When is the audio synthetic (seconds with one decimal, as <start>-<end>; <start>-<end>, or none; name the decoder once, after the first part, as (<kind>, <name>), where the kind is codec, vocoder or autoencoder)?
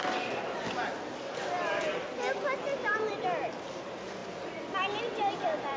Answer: none